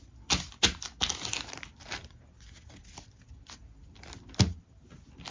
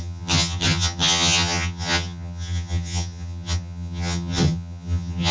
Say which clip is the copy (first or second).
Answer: second